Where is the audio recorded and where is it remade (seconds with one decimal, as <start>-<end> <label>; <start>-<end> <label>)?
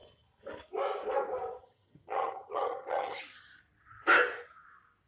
0.0-1.6 recorded; 1.6-3.2 remade; 3.2-5.1 recorded